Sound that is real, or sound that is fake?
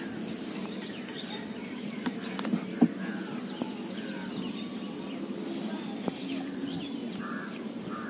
fake